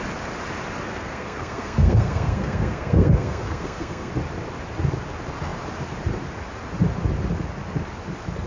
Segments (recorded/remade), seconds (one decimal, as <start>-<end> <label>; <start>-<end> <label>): 0.0-0.9 recorded; 0.9-4.1 remade; 4.1-8.5 recorded